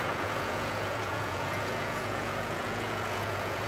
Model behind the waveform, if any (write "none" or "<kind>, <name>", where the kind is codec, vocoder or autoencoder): vocoder, Vocos